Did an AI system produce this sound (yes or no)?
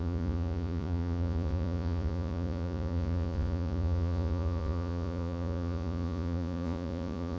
yes